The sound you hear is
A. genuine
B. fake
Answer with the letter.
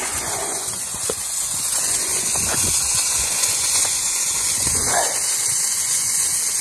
B